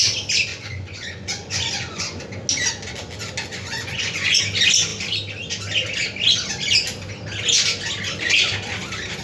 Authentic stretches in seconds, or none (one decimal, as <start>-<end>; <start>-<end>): 0.0-0.5; 2.2-3.5; 4.4-9.2